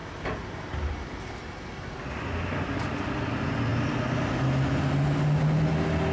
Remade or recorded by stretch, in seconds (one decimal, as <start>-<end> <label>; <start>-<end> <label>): 0.0-6.1 recorded